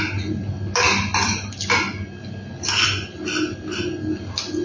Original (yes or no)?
yes